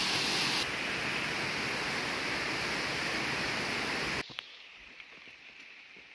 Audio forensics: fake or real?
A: real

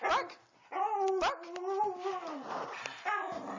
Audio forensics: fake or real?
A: real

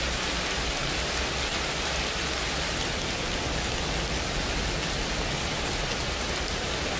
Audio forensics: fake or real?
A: real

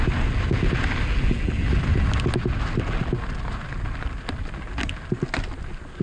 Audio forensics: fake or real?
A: real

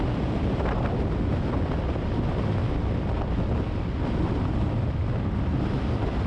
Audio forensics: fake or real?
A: real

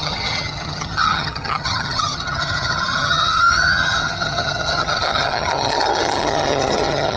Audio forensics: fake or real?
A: fake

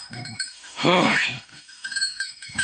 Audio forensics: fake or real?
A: fake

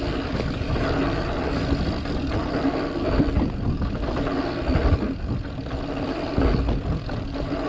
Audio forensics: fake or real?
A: real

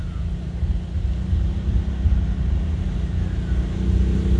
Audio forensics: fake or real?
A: real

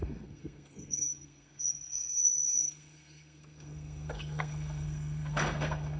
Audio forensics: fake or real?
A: fake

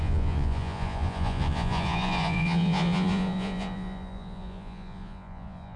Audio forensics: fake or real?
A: fake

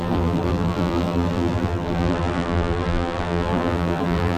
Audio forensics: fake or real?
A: fake